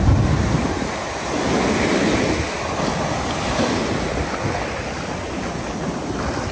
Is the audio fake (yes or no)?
no